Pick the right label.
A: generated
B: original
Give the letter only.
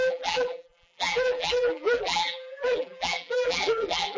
A